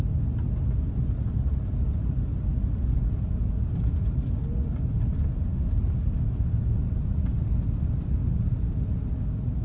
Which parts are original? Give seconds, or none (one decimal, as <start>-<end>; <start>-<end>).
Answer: 0.0-9.6